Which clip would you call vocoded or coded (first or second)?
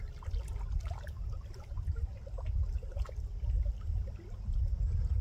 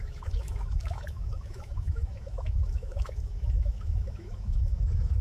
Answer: second